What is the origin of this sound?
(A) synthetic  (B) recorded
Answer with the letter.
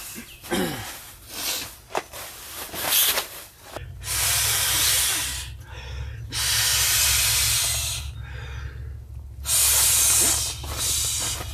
B